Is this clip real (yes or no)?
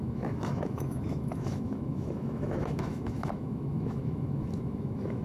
no